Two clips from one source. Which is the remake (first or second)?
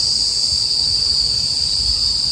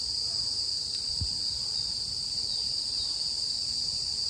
second